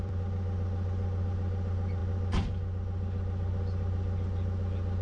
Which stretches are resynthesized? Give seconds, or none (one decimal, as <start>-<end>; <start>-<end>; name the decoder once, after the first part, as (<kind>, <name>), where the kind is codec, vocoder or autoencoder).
none